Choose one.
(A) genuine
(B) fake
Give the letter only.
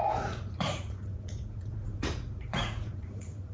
B